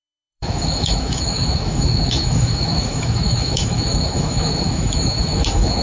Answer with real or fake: fake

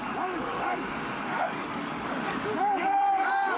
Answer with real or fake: fake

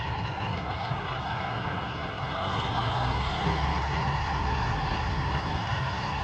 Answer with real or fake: fake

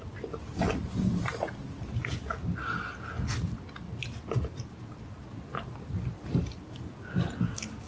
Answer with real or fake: real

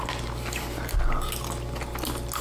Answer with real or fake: real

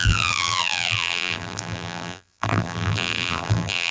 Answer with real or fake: fake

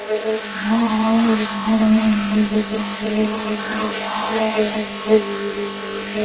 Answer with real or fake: fake